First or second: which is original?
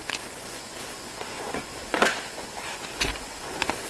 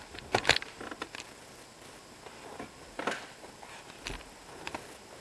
second